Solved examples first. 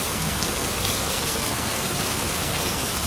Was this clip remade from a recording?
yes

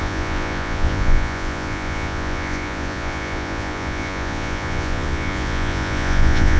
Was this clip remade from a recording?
yes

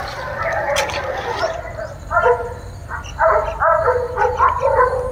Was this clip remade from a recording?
no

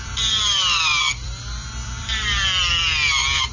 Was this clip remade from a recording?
yes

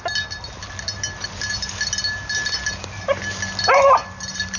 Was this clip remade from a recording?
no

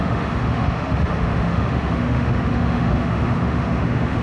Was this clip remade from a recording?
yes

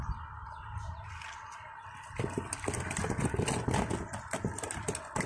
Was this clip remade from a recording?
no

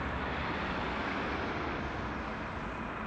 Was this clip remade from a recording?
no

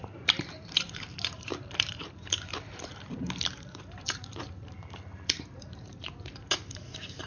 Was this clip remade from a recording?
yes